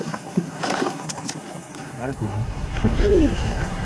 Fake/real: fake